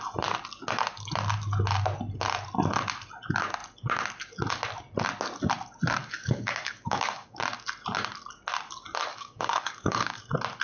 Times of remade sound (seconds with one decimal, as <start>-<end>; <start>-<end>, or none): 6.0-7.4; 9.1-10.2